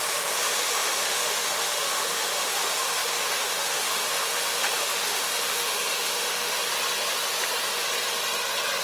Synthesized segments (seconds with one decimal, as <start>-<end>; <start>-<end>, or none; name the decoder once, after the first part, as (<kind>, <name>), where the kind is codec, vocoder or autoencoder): 0.0-6.7 (autoencoder, DAC-VAE)